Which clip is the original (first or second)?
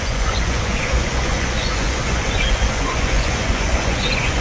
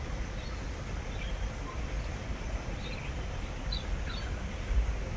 second